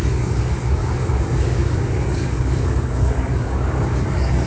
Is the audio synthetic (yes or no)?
yes